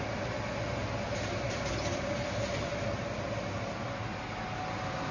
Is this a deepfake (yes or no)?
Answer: no